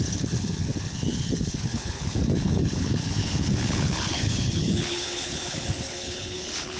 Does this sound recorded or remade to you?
remade